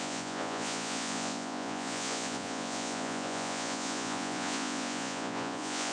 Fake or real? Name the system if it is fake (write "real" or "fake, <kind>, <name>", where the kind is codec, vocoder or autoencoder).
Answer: fake, vocoder, Vocos